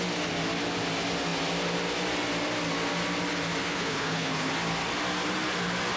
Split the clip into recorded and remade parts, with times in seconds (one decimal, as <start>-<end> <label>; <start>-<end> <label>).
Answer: 0.0-3.6 recorded; 3.6-4.5 remade; 4.5-6.0 recorded